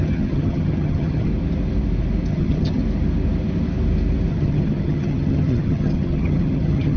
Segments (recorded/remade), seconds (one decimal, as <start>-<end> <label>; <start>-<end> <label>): 0.0-1.3 remade; 1.3-2.3 recorded; 2.3-2.8 remade; 2.8-4.3 recorded; 4.3-7.0 remade